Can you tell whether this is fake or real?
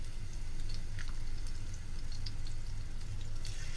real